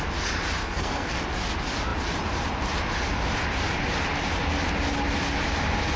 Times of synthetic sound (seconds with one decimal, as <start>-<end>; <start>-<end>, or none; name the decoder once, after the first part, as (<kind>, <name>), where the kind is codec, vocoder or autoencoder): 0.6-1.2 (codec, SNAC)